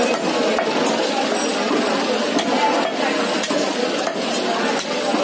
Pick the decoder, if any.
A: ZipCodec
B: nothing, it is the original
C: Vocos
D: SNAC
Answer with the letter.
B